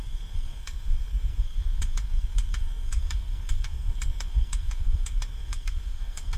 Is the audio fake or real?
fake